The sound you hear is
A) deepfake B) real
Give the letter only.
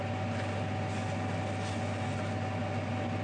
B